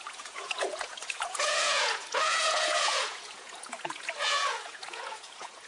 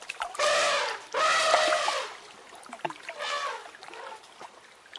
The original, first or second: second